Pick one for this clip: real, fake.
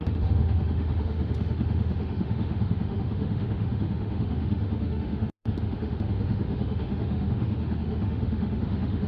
fake